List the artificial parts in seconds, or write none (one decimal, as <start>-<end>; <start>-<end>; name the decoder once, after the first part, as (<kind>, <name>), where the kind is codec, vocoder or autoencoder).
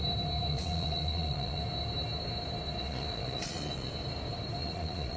0.5-1.6 (vocoder, Vocos); 2.8-3.9; 4.6-5.2